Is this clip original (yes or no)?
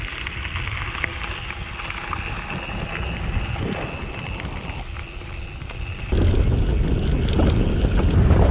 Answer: yes